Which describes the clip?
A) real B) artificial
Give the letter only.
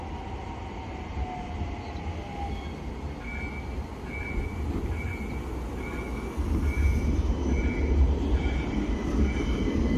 A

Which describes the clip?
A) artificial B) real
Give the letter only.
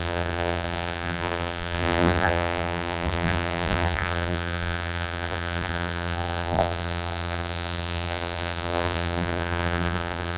A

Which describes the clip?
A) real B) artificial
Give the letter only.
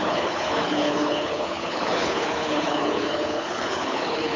B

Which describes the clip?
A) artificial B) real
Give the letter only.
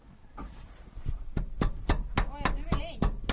B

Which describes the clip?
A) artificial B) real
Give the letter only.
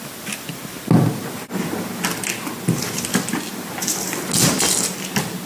B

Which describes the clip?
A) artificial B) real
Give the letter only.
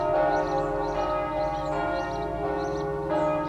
B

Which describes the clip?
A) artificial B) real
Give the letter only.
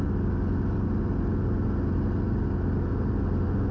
B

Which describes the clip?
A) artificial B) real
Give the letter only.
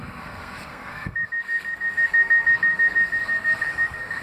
A